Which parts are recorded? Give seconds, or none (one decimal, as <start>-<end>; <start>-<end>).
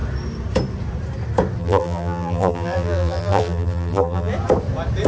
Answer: 0.0-1.6; 4.3-5.1